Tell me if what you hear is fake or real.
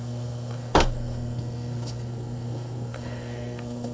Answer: fake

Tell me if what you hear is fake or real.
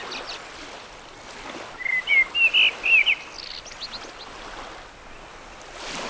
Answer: real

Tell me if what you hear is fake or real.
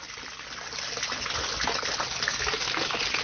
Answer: real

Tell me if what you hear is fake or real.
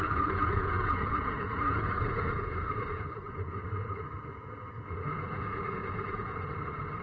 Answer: fake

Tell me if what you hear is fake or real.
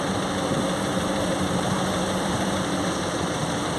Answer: fake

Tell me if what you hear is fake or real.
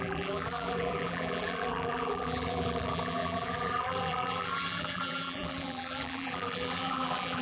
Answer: fake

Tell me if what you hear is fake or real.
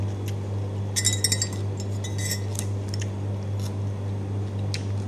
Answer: real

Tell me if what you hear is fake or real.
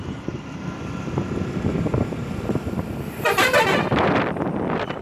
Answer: fake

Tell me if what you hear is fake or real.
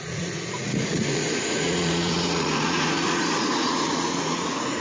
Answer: fake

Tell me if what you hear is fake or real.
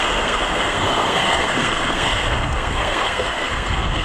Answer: fake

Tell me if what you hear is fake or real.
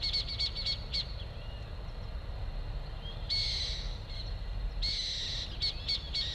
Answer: real